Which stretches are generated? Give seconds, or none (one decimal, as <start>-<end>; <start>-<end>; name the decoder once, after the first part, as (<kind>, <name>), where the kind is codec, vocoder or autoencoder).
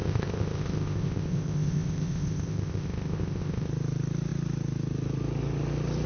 0.0-3.7 (codec, ZipCodec)